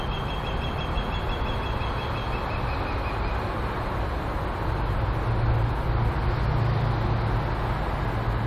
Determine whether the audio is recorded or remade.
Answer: recorded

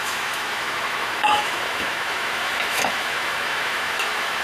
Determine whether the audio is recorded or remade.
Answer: remade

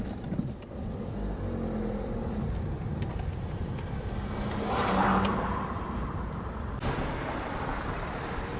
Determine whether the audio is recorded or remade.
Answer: remade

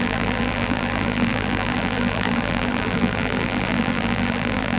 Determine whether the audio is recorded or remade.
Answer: remade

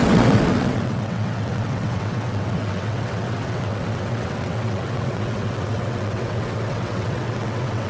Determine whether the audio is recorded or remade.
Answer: remade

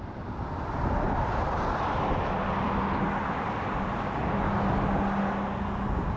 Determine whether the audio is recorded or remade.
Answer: recorded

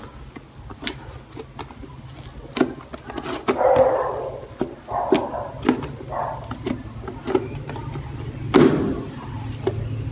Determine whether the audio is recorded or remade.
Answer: recorded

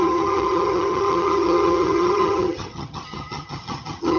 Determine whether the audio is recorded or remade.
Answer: remade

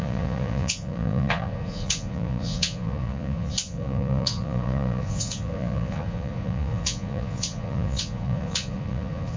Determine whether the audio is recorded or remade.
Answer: remade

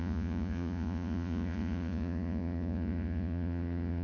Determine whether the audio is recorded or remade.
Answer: remade